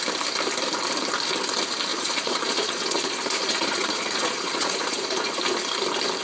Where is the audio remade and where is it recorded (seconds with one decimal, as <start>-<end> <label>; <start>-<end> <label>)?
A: 0.0-1.9 recorded; 1.9-5.4 remade; 5.4-6.2 recorded